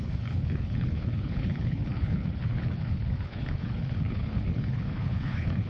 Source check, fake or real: fake